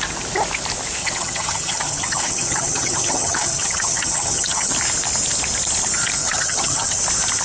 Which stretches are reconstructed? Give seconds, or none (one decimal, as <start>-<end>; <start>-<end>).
1.0-4.7; 6.2-7.0